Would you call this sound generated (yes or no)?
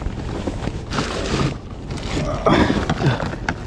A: no